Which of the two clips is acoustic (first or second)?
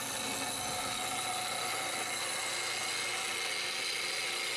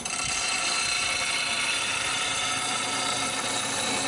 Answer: first